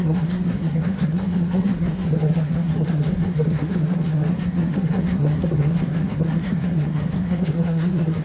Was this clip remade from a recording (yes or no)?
yes